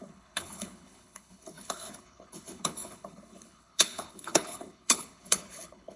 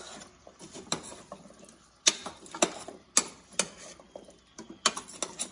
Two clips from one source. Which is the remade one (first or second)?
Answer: first